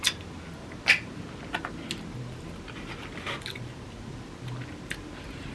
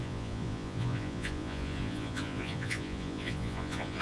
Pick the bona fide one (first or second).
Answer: first